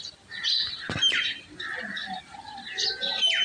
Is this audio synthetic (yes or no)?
no